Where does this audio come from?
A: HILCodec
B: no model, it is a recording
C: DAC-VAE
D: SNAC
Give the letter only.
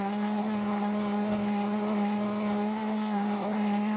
D